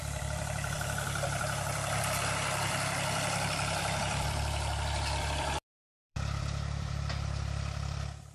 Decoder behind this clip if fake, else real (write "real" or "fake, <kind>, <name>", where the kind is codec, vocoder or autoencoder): fake, vocoder, BigVGAN v2